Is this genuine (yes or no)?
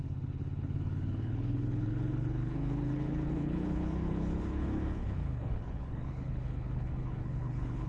no